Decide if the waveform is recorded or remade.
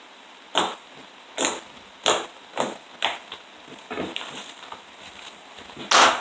recorded